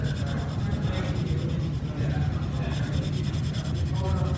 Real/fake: real